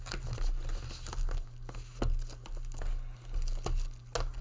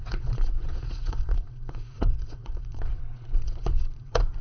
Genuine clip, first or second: first